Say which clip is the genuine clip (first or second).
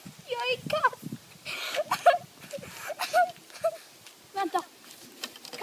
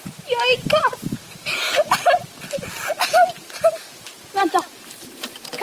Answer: first